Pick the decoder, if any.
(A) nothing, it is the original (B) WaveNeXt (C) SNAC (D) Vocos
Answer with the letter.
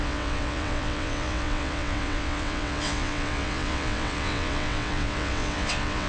B